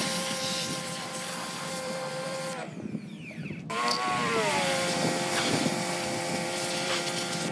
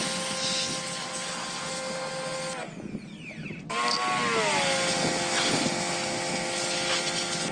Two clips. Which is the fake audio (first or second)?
first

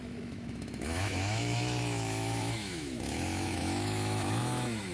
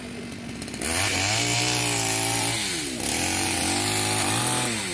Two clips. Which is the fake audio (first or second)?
first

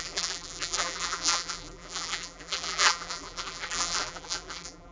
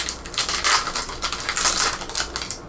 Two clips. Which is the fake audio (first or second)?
first